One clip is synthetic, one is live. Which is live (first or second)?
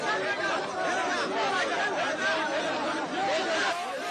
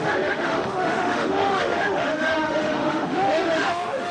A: first